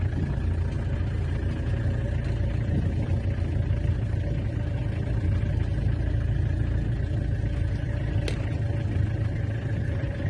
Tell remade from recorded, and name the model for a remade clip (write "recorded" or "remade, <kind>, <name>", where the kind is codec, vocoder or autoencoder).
recorded